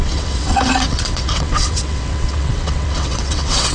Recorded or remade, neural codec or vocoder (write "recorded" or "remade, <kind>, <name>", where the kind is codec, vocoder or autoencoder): remade, vocoder, WaveNeXt